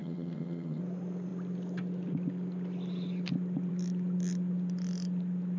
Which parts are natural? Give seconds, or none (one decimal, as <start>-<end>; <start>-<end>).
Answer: 0.8-5.6